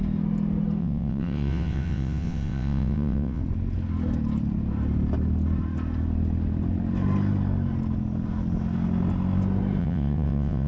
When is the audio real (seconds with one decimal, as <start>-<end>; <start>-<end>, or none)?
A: 0.0-0.8; 3.4-9.8